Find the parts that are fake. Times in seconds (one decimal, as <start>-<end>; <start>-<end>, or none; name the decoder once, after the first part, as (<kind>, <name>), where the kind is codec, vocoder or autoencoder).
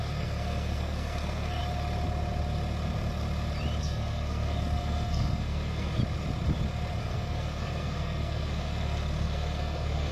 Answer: 0.0-1.6 (codec, SNAC); 3.8-6.0; 7.0-10.1